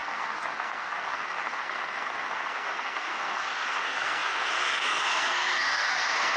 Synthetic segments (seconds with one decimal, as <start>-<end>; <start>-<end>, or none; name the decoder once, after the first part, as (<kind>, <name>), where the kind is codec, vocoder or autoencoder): 0.0-6.4 (codec, SNAC)